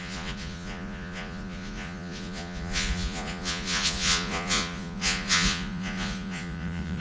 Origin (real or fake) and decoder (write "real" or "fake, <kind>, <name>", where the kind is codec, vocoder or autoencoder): fake, vocoder, Vocos